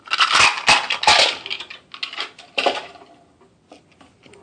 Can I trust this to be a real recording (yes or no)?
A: yes